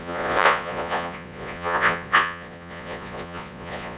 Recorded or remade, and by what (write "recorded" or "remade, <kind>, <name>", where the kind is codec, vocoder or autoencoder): remade, vocoder, Vocos